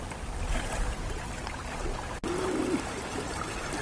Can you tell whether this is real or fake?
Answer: real